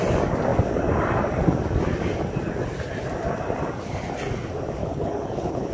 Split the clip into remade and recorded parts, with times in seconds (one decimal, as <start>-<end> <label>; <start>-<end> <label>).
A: 0.0-4.8 recorded; 4.8-5.7 remade